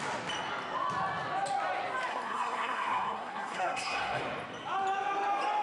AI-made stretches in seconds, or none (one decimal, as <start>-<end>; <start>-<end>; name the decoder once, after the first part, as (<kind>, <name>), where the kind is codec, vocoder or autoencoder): 2.1-4.2 (codec, SNAC)